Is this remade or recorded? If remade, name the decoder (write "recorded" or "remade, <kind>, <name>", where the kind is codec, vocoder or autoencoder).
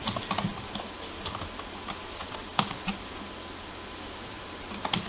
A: recorded